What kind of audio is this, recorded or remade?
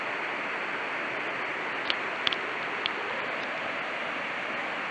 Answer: recorded